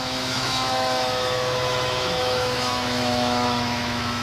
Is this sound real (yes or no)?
no